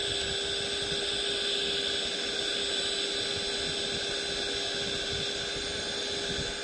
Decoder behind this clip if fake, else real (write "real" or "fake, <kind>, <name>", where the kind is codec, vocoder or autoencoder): real